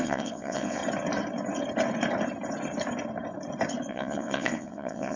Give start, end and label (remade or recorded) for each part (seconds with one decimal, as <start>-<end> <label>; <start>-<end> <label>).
0.0-0.8 remade; 0.8-3.9 recorded; 3.9-5.2 remade